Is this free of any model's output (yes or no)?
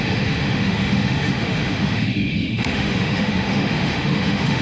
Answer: no